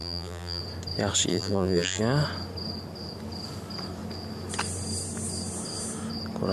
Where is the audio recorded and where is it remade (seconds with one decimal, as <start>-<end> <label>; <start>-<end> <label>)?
0.0-0.6 remade; 0.6-1.3 recorded; 1.3-2.0 remade; 2.0-6.5 recorded